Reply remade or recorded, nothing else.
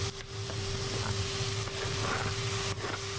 recorded